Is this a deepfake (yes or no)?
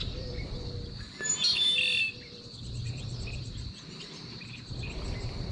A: yes